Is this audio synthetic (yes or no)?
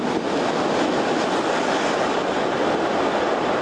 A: no